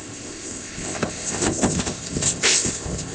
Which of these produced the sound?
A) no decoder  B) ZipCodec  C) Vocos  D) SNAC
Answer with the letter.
B